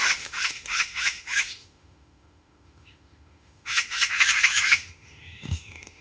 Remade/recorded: remade